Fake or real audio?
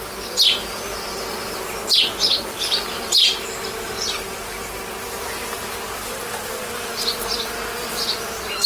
real